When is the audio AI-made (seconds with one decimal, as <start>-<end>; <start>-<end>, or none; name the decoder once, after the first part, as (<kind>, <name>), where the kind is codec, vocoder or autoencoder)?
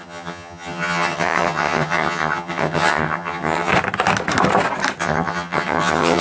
0.0-3.7 (vocoder, HiFi-GAN); 5.0-6.2